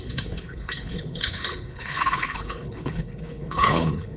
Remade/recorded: remade